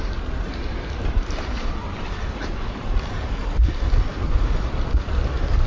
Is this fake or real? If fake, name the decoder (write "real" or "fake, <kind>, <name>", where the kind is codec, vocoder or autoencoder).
fake, vocoder, BigVGAN v2